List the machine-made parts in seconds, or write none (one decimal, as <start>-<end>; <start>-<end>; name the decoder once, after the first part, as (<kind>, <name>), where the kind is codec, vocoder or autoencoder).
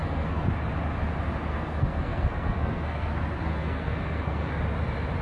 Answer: 0.0-0.5 (codec, SNAC); 1.5-4.6